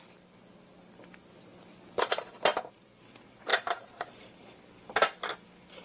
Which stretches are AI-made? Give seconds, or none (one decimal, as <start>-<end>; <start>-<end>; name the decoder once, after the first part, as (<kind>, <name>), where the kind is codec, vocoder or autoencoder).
3.5-4.6 (vocoder, BigVGAN v2)